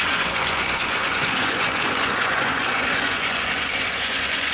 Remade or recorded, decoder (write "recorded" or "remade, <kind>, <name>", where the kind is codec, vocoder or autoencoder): remade, vocoder, Vocos